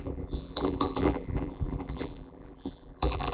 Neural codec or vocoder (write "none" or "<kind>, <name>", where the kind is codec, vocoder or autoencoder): vocoder, BigVGAN v2